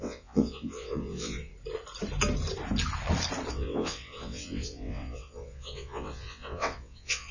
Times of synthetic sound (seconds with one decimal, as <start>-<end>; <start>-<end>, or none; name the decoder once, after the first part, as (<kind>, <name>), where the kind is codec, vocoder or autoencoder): 0.0-1.5 (vocoder, WaveNeXt); 3.5-7.3